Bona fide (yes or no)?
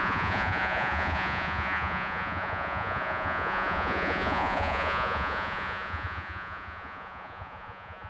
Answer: no